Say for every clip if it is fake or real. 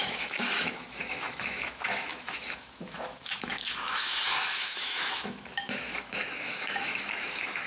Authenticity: fake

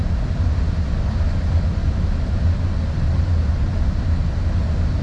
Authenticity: real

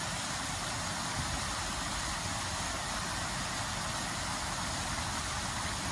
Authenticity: real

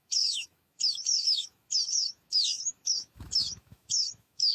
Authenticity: fake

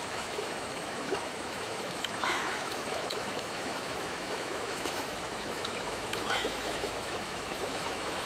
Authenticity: fake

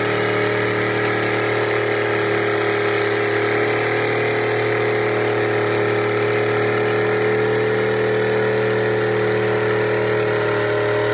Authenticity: real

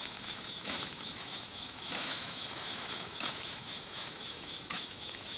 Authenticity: fake